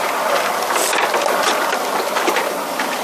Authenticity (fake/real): real